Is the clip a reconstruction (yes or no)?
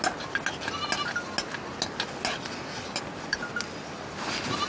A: no